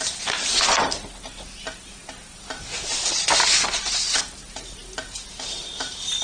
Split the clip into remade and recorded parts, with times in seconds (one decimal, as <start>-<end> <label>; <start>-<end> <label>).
0.0-6.2 recorded